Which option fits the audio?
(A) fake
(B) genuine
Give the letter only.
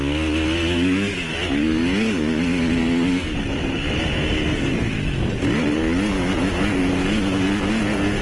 B